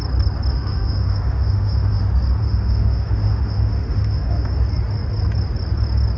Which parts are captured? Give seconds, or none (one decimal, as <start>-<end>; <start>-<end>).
0.0-0.5; 2.0-2.4; 4.5-6.2